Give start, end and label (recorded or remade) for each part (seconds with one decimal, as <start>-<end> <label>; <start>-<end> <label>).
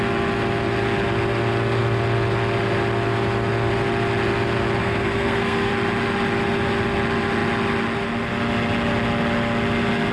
0.0-4.8 recorded; 4.8-5.7 remade; 5.7-10.1 recorded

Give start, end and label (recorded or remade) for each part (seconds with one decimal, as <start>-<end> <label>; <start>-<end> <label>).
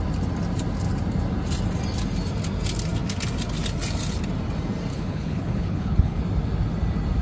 0.0-4.9 recorded; 4.9-6.2 remade; 6.2-7.2 recorded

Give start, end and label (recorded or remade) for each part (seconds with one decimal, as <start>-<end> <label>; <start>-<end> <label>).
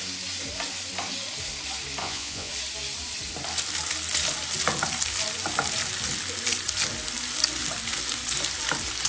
0.0-2.0 recorded; 2.0-2.5 remade; 2.5-9.1 recorded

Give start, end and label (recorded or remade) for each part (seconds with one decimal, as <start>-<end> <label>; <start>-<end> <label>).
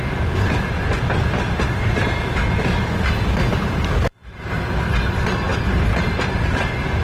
0.0-7.0 recorded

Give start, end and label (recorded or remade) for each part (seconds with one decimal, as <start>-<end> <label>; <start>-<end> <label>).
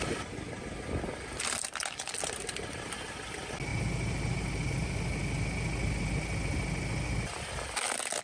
0.0-8.2 recorded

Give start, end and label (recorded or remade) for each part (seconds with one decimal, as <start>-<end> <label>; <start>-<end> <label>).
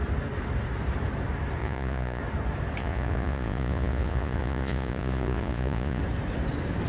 0.0-1.6 recorded; 1.6-2.2 remade; 2.2-2.8 recorded; 2.8-6.0 remade; 6.0-6.9 recorded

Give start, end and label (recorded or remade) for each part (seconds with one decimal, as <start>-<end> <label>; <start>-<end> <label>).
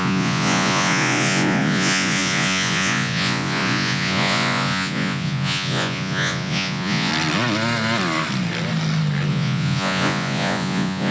0.0-7.1 remade; 7.1-9.3 recorded; 9.3-11.1 remade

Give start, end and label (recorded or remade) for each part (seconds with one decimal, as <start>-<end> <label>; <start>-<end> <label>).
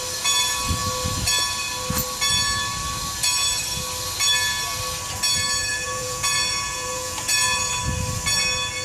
0.0-5.7 recorded; 5.7-7.7 remade; 7.7-8.8 recorded